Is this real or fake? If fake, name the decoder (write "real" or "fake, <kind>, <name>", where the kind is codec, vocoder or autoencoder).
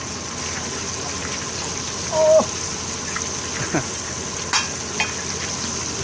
real